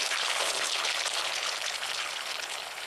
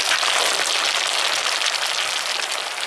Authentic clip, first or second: second